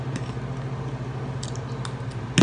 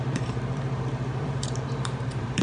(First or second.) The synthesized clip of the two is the second